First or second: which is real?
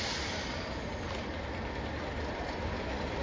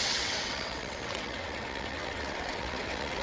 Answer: first